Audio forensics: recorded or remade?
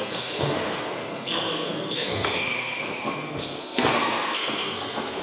remade